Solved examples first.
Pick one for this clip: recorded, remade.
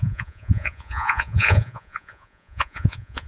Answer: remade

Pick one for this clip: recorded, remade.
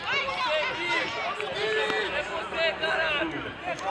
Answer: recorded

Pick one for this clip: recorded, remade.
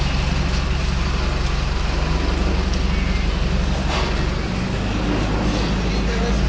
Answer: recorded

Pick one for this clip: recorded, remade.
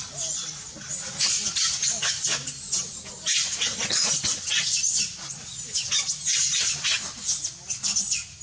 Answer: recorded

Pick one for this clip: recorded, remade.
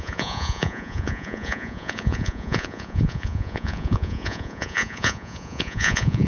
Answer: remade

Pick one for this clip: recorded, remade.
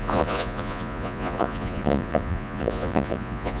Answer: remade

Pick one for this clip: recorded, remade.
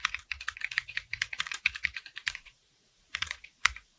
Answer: remade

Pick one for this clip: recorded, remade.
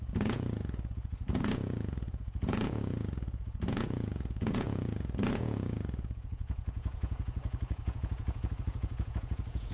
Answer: remade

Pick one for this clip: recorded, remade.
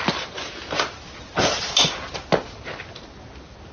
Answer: recorded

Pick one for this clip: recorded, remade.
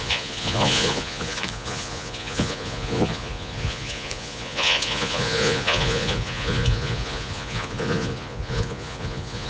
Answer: remade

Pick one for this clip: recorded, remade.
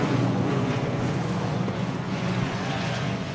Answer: remade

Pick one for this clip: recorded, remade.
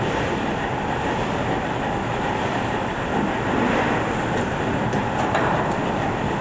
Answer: recorded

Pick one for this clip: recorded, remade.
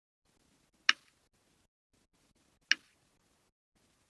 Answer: recorded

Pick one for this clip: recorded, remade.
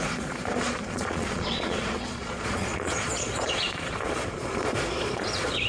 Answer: remade